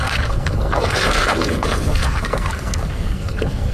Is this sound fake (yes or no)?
yes